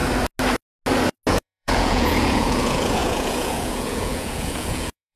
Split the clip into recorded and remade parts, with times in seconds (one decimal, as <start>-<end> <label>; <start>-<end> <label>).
0.0-1.3 recorded; 1.3-5.2 remade